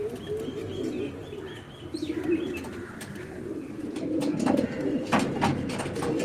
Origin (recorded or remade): recorded